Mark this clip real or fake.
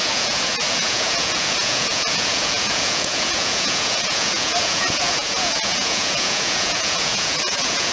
fake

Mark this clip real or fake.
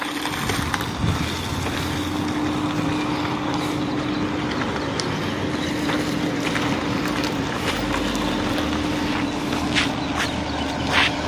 real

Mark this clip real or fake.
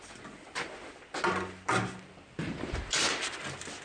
real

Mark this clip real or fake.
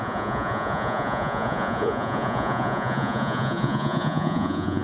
fake